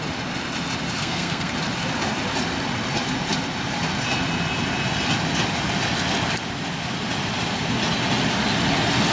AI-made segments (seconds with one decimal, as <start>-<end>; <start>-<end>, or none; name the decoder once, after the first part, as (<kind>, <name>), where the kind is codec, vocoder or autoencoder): 1.0-1.5 (codec, SNAC)

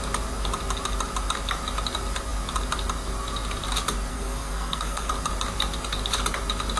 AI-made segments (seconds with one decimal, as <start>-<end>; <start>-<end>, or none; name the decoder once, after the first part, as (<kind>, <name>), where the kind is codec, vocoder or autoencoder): 4.1-5.1 (codec, SNAC)